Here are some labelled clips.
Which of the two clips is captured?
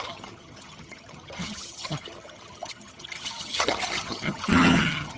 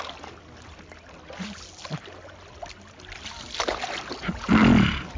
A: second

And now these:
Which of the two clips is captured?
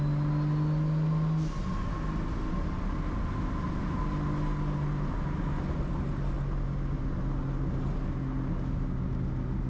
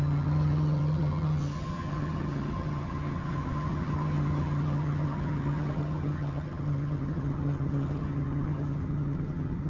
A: first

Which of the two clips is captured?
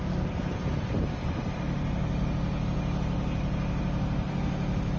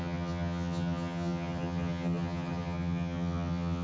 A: first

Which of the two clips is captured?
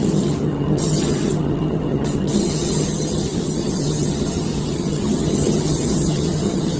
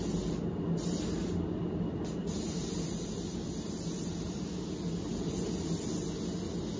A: second